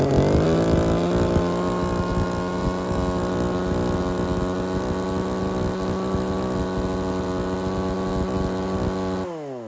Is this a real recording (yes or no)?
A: yes